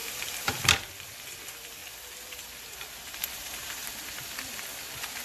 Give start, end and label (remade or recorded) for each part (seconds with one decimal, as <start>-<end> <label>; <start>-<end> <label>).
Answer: 0.0-5.2 remade